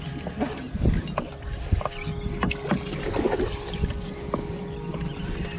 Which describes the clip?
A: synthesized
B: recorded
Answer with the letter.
B